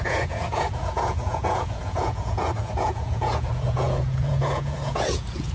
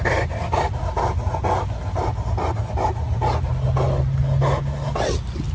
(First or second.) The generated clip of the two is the first